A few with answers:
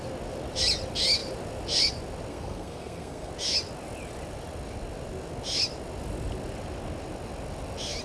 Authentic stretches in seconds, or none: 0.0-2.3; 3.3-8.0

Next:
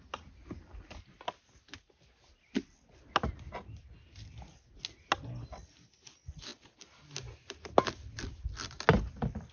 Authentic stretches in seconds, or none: 0.0-9.5

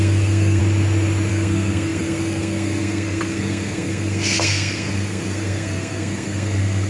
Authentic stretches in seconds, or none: 0.6-1.3

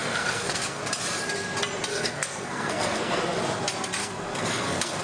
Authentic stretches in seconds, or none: 0.8-1.9; 3.2-4.0

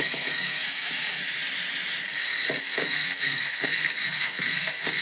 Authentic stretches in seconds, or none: 1.2-2.6